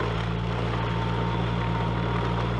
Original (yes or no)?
yes